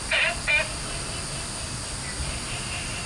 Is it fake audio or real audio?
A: real